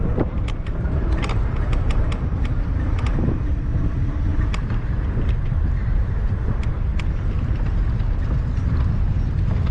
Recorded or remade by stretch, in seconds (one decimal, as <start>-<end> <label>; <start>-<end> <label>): 0.0-6.9 remade; 6.9-9.7 recorded